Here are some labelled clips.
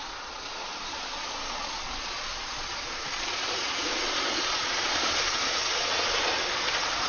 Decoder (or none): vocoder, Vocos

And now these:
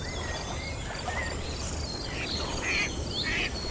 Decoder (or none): none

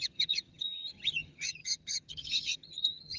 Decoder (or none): vocoder, HiFi-GAN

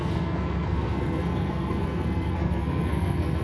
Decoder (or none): codec, SNAC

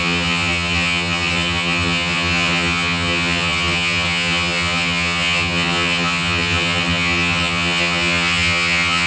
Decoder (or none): vocoder, HiFi-GAN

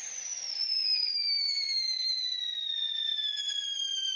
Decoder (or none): none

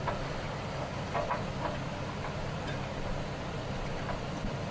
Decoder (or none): none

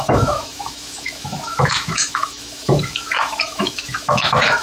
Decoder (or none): autoencoder, DAC-VAE